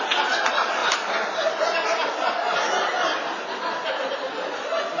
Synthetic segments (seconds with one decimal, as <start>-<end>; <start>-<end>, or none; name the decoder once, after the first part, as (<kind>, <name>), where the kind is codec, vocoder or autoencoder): 0.8-1.5 (vocoder, BigVGAN v2)